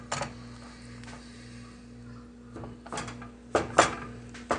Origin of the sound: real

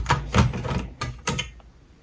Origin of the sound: real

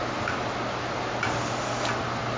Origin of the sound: real